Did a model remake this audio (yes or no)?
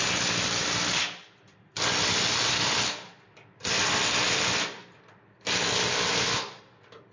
no